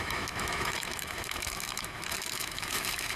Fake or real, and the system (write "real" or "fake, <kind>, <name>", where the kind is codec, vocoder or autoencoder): fake, autoencoder, DAC-VAE